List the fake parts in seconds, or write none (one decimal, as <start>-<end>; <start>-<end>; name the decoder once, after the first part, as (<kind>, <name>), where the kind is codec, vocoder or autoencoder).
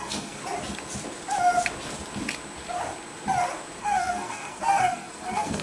0.0-0.4 (codec, SNAC); 3.8-5.6